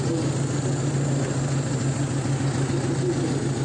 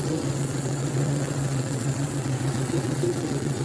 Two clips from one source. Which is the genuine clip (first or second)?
first